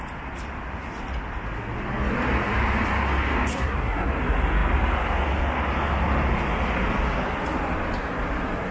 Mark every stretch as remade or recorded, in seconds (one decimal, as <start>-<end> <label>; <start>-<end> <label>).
0.0-3.5 recorded; 3.5-4.1 remade; 4.1-8.7 recorded